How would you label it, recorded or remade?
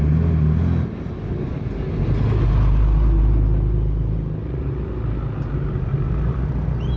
recorded